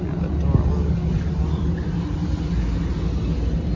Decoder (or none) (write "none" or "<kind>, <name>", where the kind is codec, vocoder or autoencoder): none